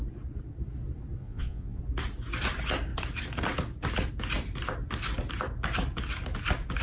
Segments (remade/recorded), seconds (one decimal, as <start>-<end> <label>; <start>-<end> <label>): 0.0-1.2 recorded; 1.2-1.8 remade; 1.8-6.8 recorded